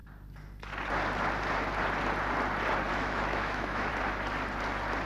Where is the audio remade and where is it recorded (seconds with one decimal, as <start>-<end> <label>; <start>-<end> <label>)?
0.0-2.9 recorded; 2.9-3.9 remade; 3.9-5.1 recorded